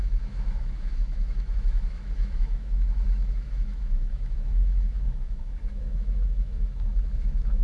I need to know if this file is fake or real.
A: fake